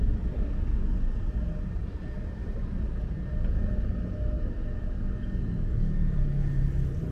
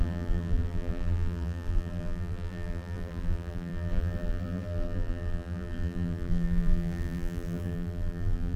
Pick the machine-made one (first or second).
second